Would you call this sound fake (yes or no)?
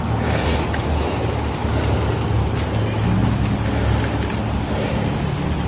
no